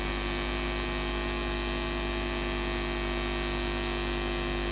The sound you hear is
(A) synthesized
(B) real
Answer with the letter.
B